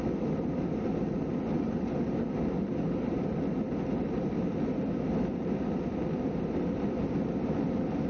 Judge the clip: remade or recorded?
recorded